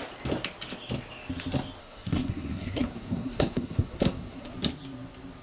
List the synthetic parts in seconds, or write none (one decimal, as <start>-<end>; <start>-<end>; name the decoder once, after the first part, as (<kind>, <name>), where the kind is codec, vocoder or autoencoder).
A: 1.8-4.5 (codec, SNAC)